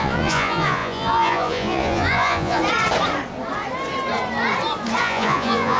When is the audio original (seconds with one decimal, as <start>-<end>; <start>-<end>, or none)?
2.6-5.0